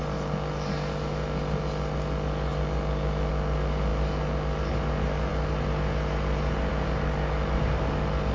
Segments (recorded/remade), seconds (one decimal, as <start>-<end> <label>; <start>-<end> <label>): 0.0-8.3 recorded